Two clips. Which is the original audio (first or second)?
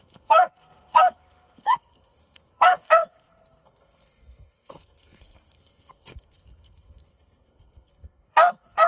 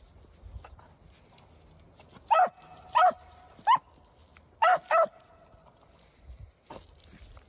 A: second